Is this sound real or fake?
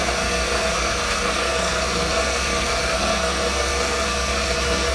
fake